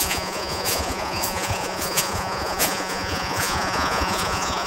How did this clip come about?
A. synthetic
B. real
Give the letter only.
A